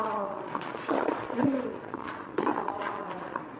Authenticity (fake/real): fake